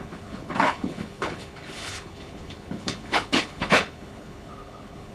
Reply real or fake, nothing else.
fake